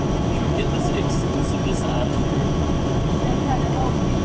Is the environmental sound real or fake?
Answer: fake